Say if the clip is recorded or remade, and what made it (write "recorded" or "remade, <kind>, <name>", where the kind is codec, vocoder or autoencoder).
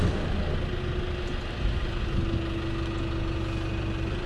recorded